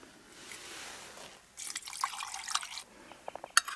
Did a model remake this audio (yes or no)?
no